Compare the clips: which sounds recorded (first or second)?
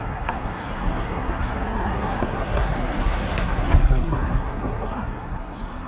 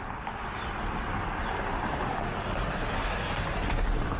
second